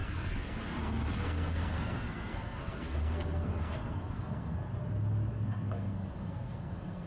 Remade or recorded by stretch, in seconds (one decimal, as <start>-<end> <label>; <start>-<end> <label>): 0.0-4.7 remade; 4.7-5.3 recorded; 5.3-7.1 remade